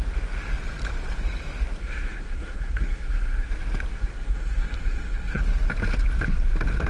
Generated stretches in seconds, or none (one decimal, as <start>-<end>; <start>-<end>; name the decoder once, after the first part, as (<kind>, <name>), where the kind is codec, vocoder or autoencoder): 1.8-3.5 (codec, SNAC); 3.9-5.4